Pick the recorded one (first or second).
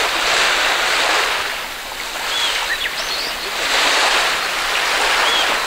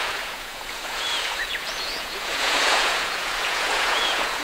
first